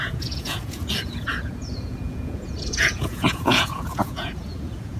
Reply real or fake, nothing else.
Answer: fake